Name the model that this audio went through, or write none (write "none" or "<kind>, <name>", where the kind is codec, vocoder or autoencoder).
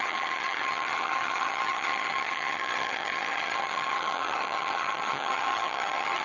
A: vocoder, HiFi-GAN